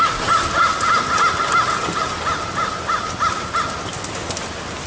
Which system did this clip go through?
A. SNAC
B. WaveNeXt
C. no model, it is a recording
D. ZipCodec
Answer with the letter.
C